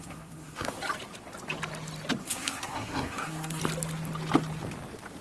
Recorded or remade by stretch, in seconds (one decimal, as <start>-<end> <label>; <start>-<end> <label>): 0.0-0.7 remade; 0.7-2.2 recorded; 2.2-3.6 remade; 3.6-5.2 recorded